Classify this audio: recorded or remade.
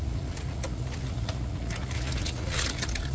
remade